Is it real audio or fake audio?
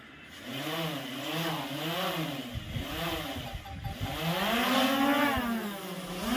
real